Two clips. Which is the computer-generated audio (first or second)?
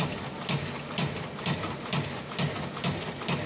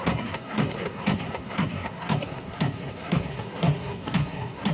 second